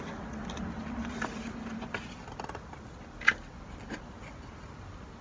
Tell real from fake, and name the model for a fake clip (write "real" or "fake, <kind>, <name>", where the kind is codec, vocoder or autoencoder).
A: real